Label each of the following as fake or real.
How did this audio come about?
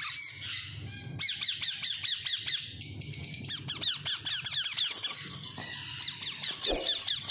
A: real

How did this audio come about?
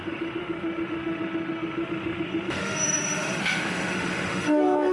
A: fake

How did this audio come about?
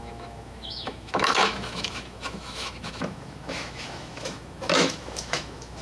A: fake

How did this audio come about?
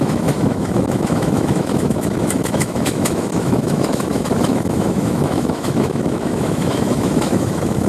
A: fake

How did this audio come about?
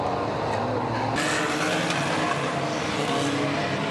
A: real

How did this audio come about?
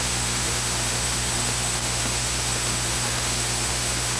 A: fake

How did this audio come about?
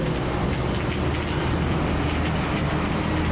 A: real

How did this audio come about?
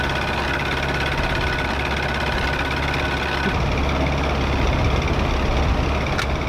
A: real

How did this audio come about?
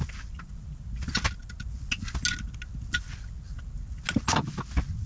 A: real